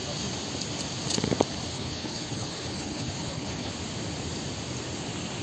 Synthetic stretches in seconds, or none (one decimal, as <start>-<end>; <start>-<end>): 1.7-3.7